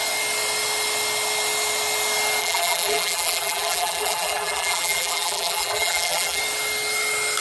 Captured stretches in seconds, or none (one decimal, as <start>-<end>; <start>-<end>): 0.0-2.4; 6.4-7.4

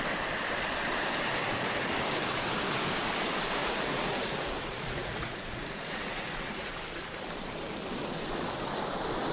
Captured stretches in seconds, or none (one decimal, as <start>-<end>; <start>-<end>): 0.0-3.6; 6.7-9.3

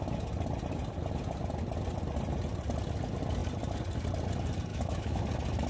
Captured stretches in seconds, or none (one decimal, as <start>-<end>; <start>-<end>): 0.0-4.7; 5.2-5.7

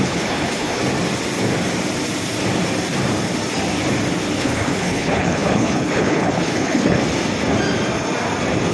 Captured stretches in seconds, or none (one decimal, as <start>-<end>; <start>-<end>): 0.8-4.4; 7.0-8.7

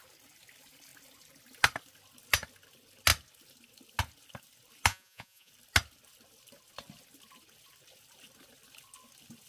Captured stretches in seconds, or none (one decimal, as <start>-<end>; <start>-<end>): 0.0-4.9; 5.5-9.5